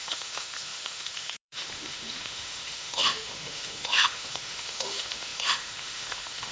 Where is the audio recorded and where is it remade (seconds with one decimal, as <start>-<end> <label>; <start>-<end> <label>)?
0.0-6.5 remade